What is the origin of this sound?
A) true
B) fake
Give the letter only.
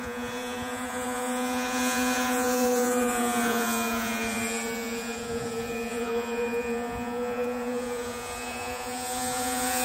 B